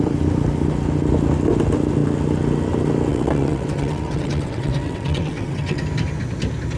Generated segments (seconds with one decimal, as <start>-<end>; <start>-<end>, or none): 3.1-5.8